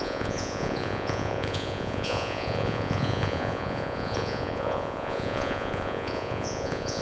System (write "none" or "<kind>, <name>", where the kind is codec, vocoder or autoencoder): vocoder, Vocos